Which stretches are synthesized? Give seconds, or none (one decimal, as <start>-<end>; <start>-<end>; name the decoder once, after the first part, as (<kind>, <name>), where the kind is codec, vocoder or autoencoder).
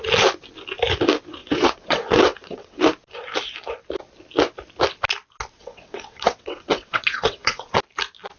1.4-2.8 (vocoder, WaveNeXt); 5.6-7.7